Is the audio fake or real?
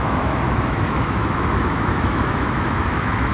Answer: fake